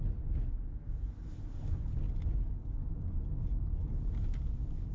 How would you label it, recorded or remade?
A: recorded